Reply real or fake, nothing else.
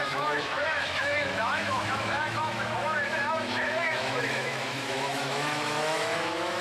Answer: fake